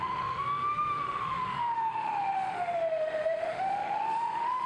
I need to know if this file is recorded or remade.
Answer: remade